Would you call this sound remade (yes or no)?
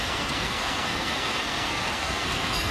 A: yes